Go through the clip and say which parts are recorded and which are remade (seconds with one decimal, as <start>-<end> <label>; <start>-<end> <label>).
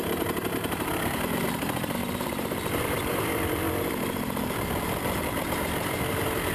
0.0-2.0 recorded; 2.0-5.9 remade; 5.9-6.5 recorded